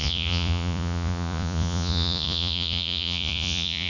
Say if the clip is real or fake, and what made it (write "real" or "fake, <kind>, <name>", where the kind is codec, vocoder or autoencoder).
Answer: fake, vocoder, Vocos